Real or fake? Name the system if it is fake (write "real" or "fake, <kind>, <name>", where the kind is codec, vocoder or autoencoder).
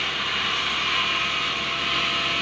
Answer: real